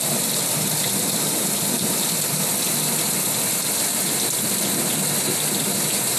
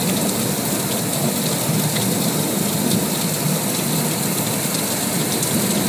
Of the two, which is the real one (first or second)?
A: first